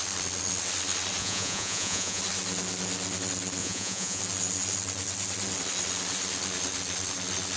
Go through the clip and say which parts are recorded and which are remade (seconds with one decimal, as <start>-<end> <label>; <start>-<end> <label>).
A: 0.0-1.2 recorded; 1.2-2.2 remade; 2.2-3.6 recorded; 3.6-4.2 remade; 4.2-7.6 recorded